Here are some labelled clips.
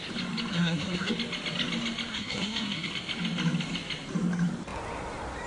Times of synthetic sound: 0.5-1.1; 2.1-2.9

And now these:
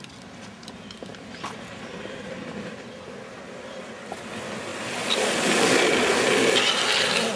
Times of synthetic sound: none